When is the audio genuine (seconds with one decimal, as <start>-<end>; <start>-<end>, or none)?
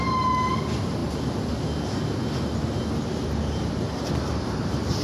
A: 0.0-5.0